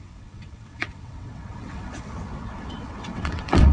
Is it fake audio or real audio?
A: fake